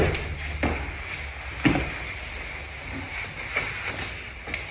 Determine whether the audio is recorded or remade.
recorded